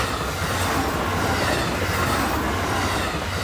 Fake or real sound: real